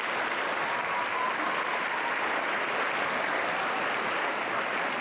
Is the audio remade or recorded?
recorded